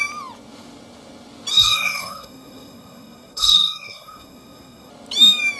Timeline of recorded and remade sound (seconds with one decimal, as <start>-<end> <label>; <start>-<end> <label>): 0.0-1.5 recorded; 1.5-4.9 remade; 4.9-5.6 recorded